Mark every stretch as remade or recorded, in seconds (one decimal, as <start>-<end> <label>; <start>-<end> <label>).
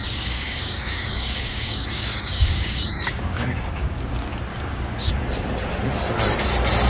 0.0-4.1 remade; 4.1-4.5 recorded; 4.5-5.1 remade; 5.1-6.9 recorded